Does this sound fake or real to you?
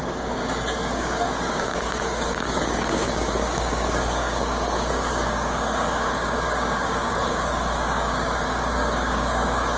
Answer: fake